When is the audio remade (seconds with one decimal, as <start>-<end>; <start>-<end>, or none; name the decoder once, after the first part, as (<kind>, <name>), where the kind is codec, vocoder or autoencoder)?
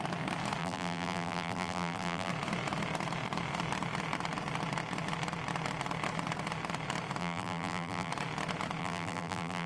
0.6-2.3 (vocoder, BigVGAN v2); 7.2-8.1; 8.8-9.7